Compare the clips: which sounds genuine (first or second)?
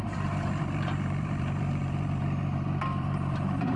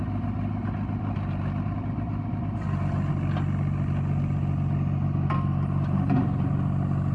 second